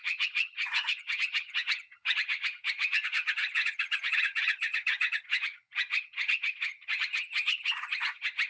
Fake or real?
fake